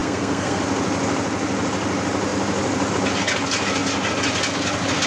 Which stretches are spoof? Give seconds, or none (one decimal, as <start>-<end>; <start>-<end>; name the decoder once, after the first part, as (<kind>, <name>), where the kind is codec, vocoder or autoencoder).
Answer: 0.0-0.6 (codec, SNAC)